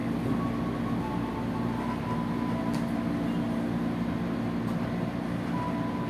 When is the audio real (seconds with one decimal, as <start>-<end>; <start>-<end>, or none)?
0.0-6.1